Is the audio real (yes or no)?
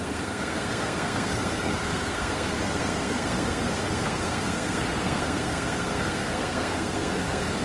no